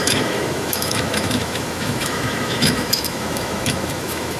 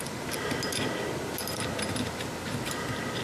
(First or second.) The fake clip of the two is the first